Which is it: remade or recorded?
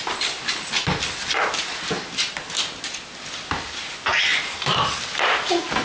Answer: recorded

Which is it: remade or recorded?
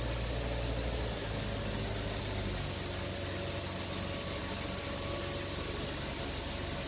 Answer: recorded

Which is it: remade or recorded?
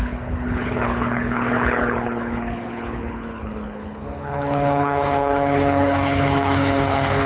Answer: remade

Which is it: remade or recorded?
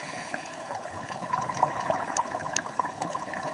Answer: remade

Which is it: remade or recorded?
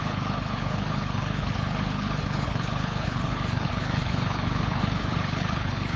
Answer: remade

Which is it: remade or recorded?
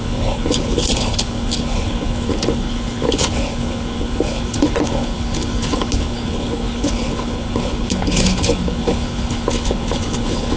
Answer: remade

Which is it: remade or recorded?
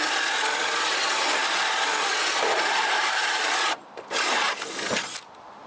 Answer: recorded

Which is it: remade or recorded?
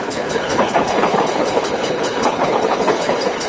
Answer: remade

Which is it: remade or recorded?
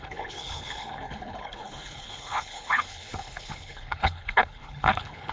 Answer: remade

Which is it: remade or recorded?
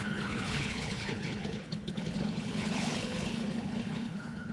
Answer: remade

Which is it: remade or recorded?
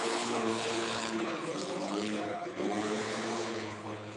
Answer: remade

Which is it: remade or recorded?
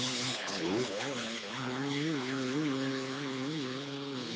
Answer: remade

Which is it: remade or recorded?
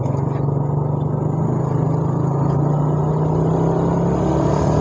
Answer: recorded